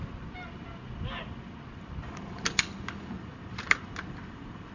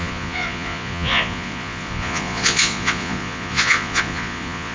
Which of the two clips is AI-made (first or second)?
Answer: second